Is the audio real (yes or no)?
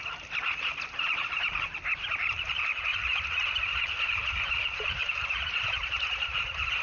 no